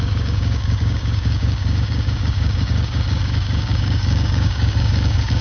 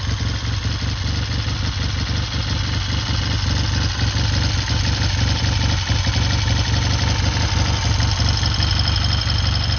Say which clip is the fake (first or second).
first